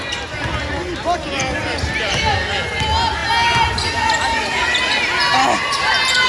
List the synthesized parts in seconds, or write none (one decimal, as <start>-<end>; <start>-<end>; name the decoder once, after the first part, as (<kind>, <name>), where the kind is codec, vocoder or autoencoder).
none